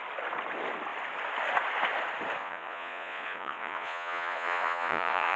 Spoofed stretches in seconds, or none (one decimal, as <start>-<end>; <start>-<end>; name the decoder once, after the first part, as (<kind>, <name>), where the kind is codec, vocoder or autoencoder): 2.4-5.4 (vocoder, Vocos)